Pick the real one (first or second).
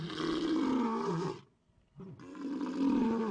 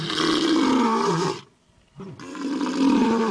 first